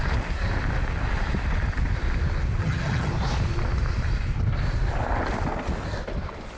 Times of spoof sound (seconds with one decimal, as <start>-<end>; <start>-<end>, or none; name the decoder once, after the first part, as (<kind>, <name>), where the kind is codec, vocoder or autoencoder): 2.6-3.1 (vocoder, HiFi-GAN)